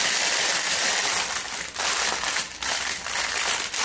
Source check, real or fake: real